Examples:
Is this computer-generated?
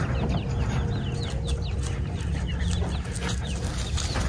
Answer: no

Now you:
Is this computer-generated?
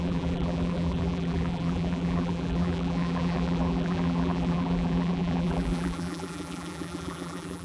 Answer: yes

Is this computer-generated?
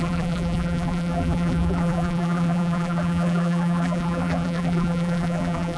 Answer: yes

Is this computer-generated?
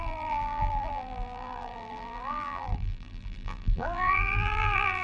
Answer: yes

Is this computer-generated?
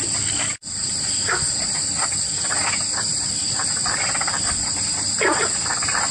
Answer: yes